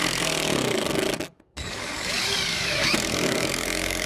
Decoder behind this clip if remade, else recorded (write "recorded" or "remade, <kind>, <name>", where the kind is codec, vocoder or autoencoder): remade, codec, DAC